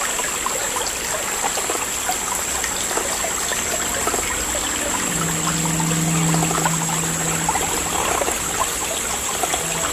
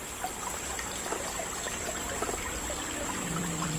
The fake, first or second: second